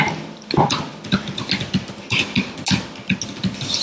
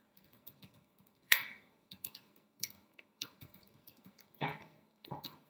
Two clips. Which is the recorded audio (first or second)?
first